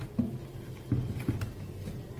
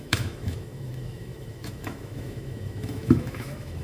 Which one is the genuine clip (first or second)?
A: first